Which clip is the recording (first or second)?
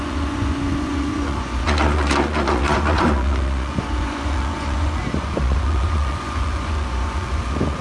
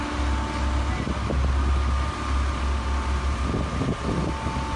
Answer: second